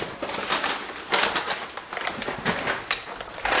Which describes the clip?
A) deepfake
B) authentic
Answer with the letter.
B